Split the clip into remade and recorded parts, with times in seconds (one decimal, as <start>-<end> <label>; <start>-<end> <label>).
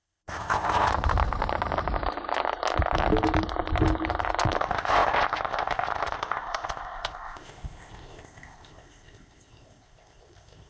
0.0-0.9 remade; 0.9-4.6 recorded; 4.6-10.7 remade